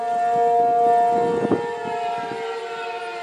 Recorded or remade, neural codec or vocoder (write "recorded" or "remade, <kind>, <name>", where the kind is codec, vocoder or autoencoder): recorded